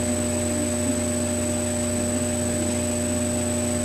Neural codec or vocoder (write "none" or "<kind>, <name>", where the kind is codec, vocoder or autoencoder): none